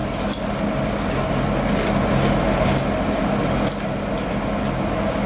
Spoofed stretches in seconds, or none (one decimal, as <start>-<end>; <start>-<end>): none